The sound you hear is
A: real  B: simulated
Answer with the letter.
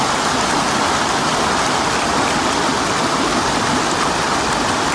A